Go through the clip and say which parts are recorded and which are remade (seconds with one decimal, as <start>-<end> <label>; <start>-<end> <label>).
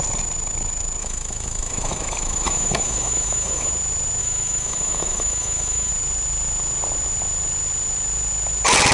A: 0.0-1.0 recorded; 1.0-3.7 remade; 3.7-4.2 recorded; 4.2-5.9 remade; 5.9-8.9 recorded